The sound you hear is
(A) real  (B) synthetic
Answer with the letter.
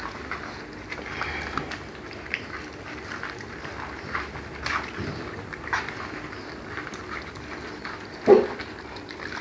A